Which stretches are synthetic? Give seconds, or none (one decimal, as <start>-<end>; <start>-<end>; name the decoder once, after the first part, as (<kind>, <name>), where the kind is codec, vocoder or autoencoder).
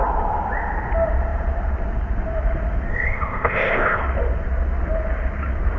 2.9-4.0 (codec, ZipCodec)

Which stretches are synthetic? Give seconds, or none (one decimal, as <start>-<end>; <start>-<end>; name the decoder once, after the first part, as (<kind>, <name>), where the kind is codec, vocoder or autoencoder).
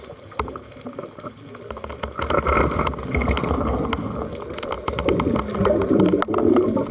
none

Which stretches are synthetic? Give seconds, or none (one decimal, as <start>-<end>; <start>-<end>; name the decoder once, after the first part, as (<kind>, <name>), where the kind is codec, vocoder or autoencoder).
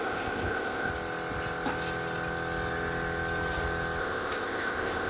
0.0-0.9 (codec, ZipCodec); 4.0-5.1